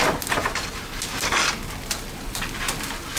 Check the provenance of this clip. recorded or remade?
recorded